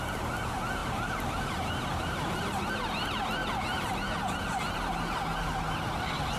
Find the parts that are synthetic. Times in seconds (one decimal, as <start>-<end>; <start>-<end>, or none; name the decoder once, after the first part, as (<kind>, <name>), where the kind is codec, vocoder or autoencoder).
0.8-2.4 (vocoder, BigVGAN v2)